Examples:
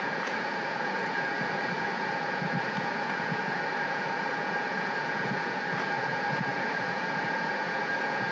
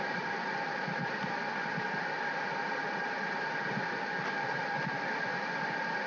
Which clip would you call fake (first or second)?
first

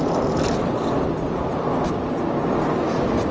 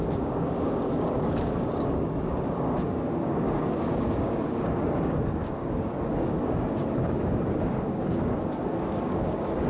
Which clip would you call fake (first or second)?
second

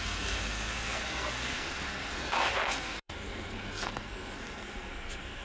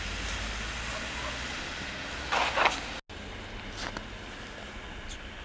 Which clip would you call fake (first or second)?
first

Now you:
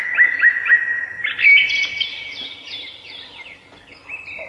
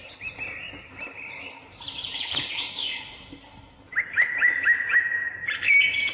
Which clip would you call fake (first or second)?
second